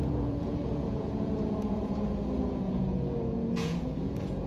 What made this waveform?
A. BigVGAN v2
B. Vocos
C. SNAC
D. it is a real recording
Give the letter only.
B